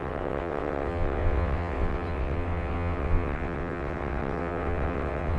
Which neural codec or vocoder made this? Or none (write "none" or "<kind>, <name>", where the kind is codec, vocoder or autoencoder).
vocoder, WaveNeXt